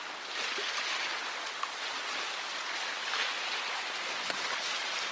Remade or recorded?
recorded